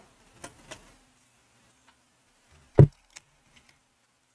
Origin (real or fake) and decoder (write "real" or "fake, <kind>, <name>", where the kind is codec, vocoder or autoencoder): real